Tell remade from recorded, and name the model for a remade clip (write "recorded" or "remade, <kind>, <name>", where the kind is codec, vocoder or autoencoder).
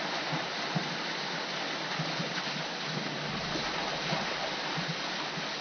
recorded